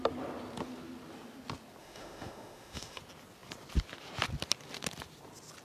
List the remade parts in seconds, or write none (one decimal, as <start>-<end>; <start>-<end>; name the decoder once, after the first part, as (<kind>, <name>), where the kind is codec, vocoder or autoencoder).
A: 1.8-3.0 (autoencoder, DAC-VAE)